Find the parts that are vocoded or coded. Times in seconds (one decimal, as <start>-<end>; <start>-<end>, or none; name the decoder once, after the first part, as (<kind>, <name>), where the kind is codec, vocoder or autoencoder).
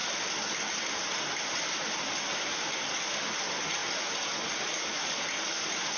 none